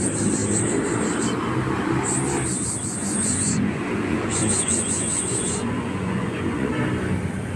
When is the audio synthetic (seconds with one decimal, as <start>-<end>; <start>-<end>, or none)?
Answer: 3.0-6.7